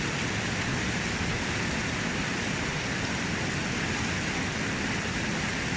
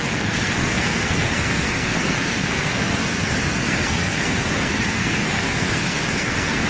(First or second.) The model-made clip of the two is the second